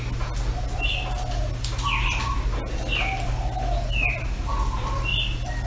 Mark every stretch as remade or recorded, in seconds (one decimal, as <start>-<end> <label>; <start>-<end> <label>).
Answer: 0.0-5.7 recorded